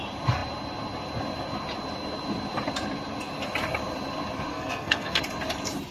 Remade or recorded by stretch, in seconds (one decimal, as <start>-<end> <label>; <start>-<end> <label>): 0.0-4.5 recorded; 4.5-5.2 remade; 5.2-5.9 recorded